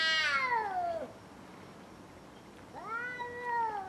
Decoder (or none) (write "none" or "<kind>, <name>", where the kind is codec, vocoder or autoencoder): none